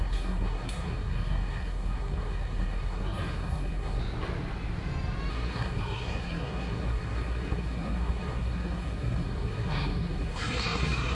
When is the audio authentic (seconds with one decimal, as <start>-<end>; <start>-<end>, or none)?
4.0-5.3